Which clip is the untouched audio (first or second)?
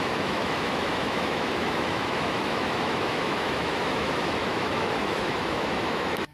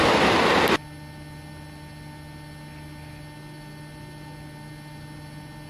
second